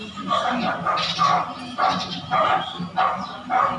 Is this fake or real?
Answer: real